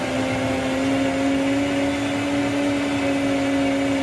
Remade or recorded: recorded